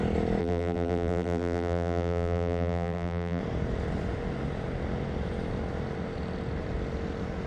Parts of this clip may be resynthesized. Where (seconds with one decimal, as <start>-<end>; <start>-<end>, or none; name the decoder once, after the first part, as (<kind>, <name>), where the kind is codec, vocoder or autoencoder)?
0.4-3.4 (vocoder, BigVGAN v2)